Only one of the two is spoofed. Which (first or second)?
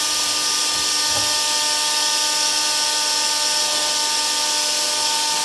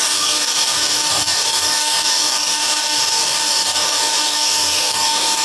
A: second